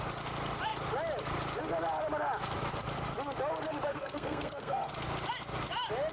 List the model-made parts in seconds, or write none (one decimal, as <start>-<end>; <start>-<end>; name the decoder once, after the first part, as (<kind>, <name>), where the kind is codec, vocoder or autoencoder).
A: 3.9-4.9 (codec, SNAC)